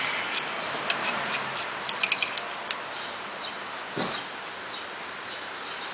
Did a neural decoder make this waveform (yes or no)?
no